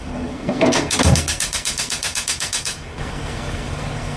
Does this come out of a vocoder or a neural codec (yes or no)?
yes